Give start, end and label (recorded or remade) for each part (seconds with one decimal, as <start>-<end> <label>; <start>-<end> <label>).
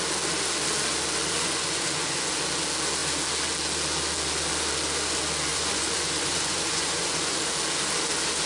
0.0-1.2 recorded; 1.2-2.3 remade; 2.3-5.5 recorded; 5.5-7.4 remade; 7.4-8.5 recorded